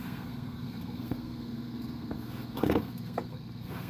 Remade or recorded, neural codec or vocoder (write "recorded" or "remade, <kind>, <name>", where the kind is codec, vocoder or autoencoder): remade, codec, SNAC